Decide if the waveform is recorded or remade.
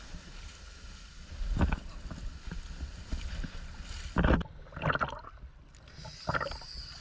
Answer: recorded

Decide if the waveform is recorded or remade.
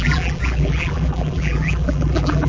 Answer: remade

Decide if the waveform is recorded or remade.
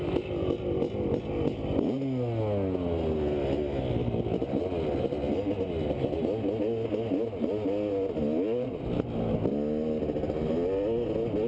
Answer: recorded